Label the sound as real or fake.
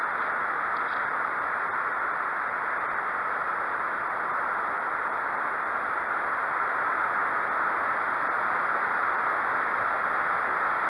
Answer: real